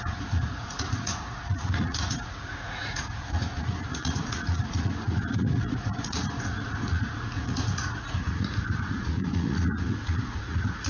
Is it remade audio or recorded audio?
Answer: remade